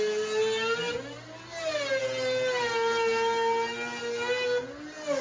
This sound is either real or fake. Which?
real